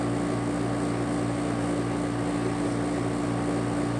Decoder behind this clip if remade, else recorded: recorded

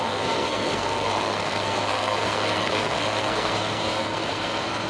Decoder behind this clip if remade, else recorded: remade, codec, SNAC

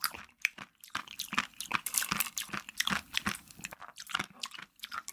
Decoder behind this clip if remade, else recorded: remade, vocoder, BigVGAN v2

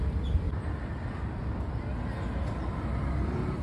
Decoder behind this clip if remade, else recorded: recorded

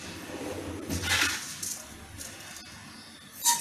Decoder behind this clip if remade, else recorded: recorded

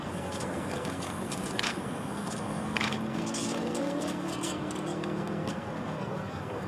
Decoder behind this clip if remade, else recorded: remade, codec, SNAC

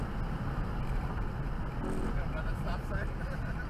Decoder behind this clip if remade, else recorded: recorded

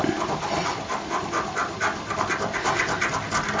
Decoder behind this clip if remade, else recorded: recorded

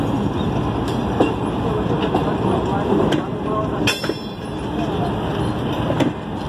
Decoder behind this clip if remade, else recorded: recorded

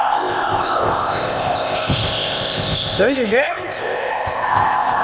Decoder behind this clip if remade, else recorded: remade, codec, ZipCodec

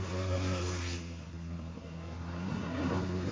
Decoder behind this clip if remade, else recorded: remade, codec, SNAC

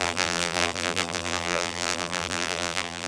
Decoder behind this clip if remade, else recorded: remade, vocoder, BigVGAN v2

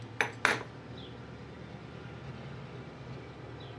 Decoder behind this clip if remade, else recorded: recorded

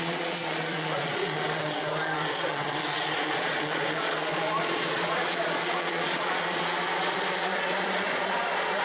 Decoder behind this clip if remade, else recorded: remade, vocoder, Vocos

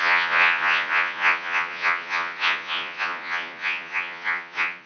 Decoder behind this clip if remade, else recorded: remade, vocoder, Vocos